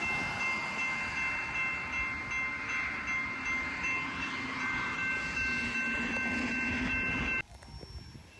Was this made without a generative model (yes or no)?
yes